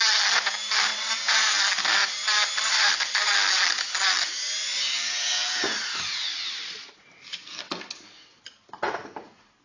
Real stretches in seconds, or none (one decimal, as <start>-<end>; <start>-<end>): 0.0-2.0; 6.9-9.6